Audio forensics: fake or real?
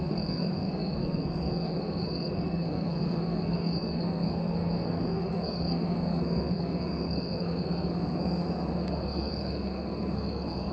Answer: fake